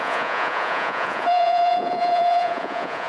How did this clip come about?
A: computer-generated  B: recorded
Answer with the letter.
A